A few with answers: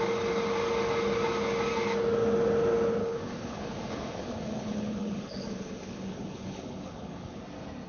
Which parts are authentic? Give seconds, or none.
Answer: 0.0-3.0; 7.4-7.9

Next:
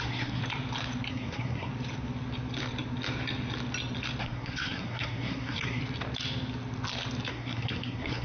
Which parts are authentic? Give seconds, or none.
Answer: 0.4-1.1; 1.7-4.2; 5.8-7.3

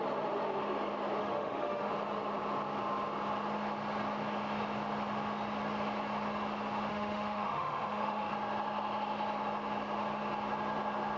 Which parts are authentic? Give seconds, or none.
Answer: 0.0-1.2; 1.9-6.9; 8.3-11.2

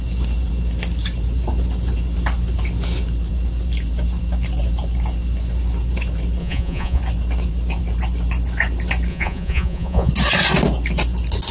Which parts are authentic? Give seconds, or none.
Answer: 0.0-6.4; 7.0-9.1; 10.1-11.5